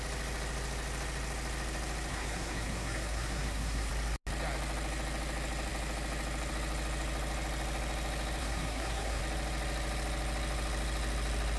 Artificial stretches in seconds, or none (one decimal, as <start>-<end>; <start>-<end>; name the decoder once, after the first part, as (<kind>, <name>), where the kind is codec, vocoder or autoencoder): 2.1-3.9 (codec, SNAC); 8.4-9.2